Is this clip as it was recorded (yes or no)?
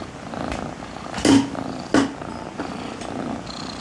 yes